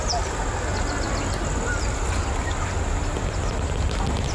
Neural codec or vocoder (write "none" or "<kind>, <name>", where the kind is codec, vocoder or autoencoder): none